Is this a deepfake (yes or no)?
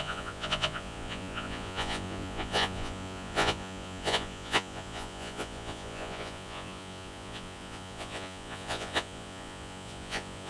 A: yes